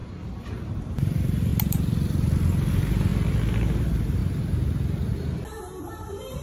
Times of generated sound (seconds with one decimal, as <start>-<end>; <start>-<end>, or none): 0.0-1.5; 2.7-3.1; 3.8-4.2; 5.8-6.4